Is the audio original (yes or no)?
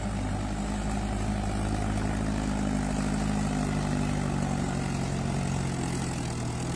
yes